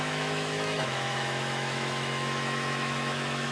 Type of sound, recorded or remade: remade